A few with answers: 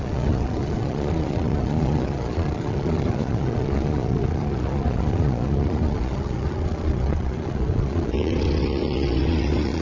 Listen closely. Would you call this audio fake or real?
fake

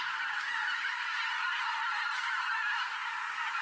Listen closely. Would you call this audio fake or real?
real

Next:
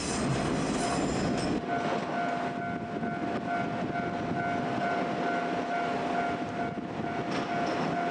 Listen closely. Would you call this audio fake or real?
real